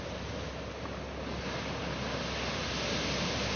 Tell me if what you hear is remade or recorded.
recorded